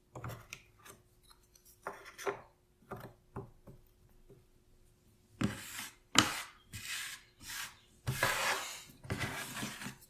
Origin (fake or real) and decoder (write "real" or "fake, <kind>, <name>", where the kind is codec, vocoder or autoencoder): real